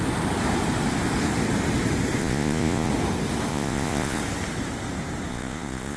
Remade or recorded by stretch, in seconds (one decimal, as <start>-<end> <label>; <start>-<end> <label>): 0.0-2.2 recorded; 2.2-2.9 remade; 2.9-3.5 recorded; 3.5-4.2 remade; 4.2-5.3 recorded; 5.3-6.0 remade